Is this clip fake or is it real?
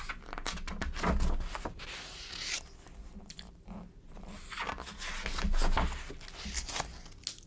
real